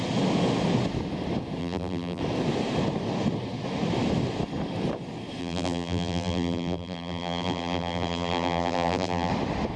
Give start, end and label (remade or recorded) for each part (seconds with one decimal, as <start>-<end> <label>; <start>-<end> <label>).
0.0-1.6 recorded; 1.6-2.2 remade; 2.2-5.4 recorded; 5.4-9.3 remade; 9.3-9.8 recorded